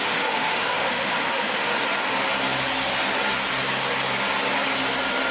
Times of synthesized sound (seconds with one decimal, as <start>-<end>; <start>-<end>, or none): 0.0-1.7

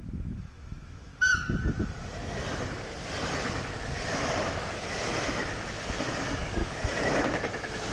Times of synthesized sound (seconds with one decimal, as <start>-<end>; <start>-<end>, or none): 0.0-1.1; 4.1-7.9

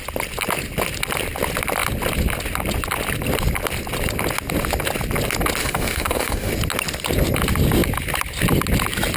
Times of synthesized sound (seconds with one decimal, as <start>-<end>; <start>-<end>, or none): 5.6-6.5